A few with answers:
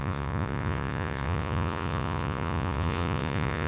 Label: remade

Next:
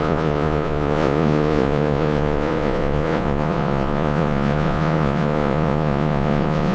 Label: remade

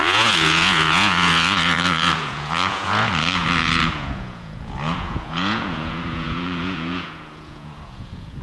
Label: remade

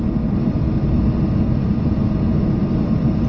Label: recorded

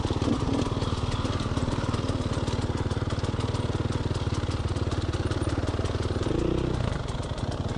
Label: recorded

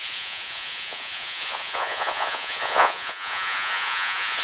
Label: remade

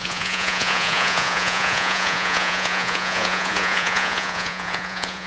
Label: remade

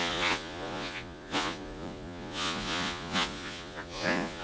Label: remade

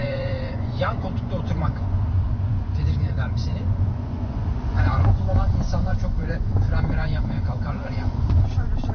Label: remade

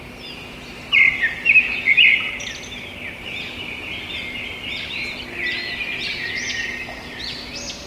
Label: recorded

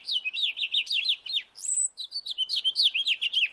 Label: recorded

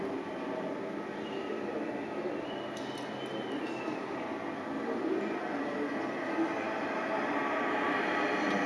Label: recorded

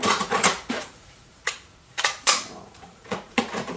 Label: remade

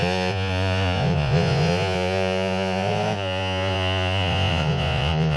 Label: remade